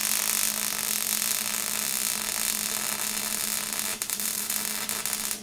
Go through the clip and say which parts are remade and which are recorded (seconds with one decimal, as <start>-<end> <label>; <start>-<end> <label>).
0.0-3.9 recorded; 3.9-4.5 remade; 4.5-5.4 recorded